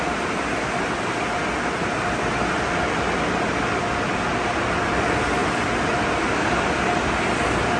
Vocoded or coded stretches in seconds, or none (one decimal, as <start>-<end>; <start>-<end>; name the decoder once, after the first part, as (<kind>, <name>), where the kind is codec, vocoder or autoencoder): none